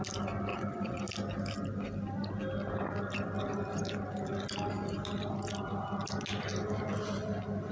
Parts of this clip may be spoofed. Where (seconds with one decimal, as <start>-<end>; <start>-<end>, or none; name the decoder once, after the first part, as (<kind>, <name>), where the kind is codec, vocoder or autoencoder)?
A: 0.5-1.0 (vocoder, WaveNeXt)